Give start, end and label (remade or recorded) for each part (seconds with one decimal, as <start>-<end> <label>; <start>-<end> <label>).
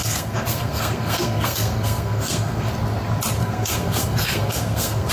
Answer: 0.0-2.7 remade; 2.7-3.4 recorded; 3.4-5.1 remade